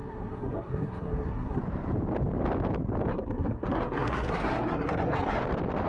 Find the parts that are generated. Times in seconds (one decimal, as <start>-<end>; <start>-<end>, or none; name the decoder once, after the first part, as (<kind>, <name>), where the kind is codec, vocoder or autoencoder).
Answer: 0.0-1.6 (codec, SNAC); 3.1-5.4